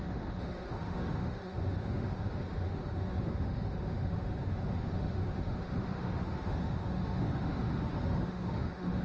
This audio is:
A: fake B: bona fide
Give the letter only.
A